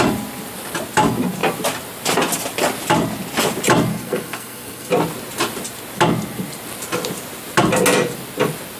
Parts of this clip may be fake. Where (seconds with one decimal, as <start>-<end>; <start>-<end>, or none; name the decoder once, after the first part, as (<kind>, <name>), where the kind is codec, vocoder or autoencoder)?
3.9-4.9 (codec, SNAC)